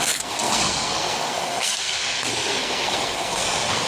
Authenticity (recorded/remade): remade